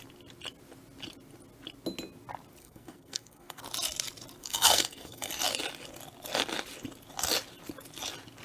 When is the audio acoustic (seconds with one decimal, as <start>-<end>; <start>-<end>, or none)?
0.0-2.6; 3.6-4.4; 5.3-8.4